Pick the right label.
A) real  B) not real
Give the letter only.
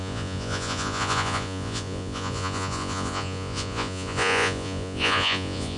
B